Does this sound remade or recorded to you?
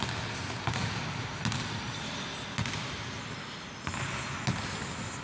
recorded